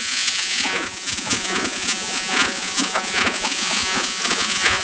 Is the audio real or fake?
fake